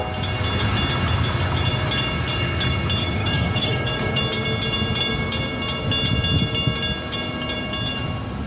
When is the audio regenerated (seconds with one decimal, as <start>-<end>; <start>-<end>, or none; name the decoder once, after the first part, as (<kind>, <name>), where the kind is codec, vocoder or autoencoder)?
3.2-4.2 (codec, DAC)